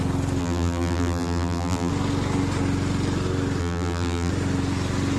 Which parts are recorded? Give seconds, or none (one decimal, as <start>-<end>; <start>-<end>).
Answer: 0.0-0.4; 1.9-3.6; 4.3-5.2